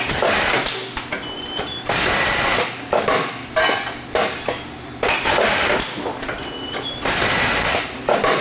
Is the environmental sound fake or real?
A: real